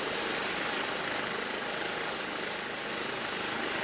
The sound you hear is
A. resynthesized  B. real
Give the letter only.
B